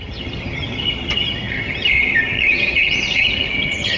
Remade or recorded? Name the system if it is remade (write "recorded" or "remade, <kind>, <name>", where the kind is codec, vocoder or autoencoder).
remade, vocoder, HiFi-GAN